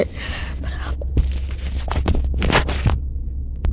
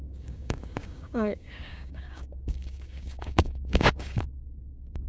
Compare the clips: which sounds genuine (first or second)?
first